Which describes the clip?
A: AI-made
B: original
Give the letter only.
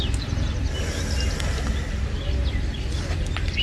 B